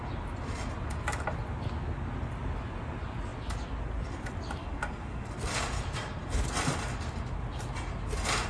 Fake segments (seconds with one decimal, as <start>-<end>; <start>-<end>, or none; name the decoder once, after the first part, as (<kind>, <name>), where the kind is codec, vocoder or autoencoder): 4.6-5.3 (codec, DAC)